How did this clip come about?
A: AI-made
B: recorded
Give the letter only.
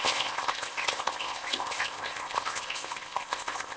A